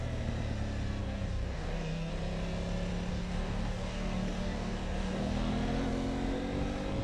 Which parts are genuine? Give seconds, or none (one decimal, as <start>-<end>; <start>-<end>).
0.0-1.0; 2.1-3.1; 5.5-7.0